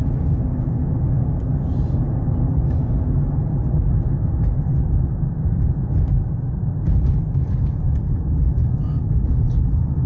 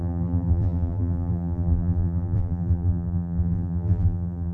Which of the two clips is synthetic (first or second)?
second